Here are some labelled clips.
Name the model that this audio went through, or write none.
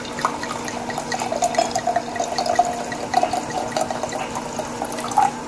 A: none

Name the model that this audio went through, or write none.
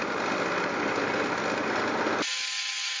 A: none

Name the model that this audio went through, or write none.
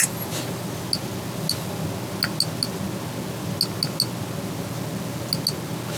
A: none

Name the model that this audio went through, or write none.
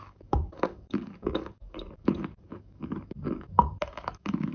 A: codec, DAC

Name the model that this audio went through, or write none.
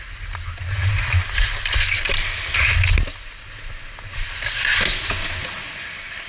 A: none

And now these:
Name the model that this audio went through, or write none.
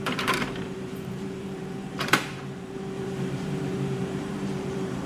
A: vocoder, BigVGAN v2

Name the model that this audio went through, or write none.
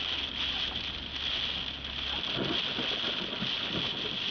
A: none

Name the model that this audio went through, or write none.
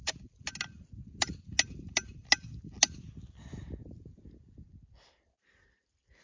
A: none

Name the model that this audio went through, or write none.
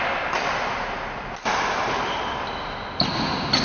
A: none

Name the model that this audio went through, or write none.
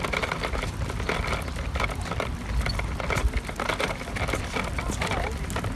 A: none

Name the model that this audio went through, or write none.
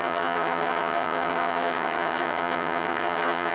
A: vocoder, HiFi-GAN